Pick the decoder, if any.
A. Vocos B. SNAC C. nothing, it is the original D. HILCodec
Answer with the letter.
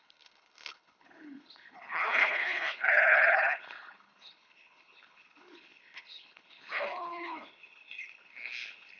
D